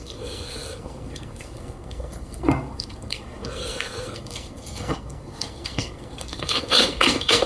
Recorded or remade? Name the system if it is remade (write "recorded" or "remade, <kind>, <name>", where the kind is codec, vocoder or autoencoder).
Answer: remade, codec, SNAC